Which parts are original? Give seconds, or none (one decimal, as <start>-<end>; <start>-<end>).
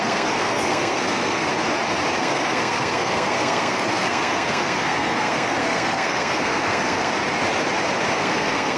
1.5-2.2; 7.1-8.1